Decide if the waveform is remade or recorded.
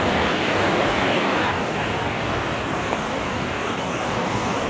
remade